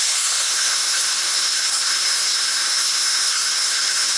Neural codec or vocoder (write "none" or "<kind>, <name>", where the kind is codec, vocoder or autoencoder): codec, SNAC